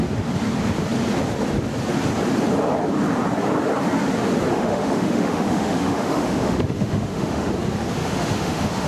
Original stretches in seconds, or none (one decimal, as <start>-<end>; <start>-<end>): 0.0-4.5; 7.5-8.0